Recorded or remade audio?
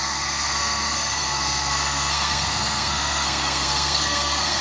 remade